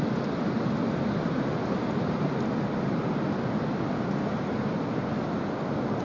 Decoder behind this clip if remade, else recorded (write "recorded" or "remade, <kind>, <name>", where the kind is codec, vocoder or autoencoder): recorded